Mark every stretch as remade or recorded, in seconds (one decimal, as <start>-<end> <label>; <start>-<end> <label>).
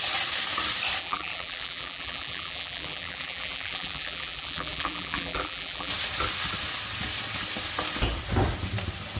0.0-1.0 recorded; 1.0-5.9 remade; 5.9-9.2 recorded